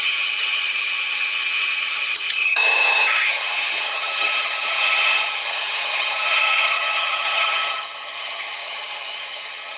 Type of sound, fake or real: fake